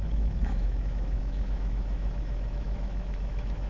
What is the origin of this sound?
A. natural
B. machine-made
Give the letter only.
B